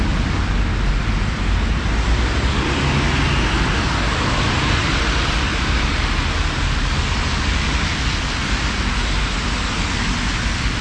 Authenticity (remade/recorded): recorded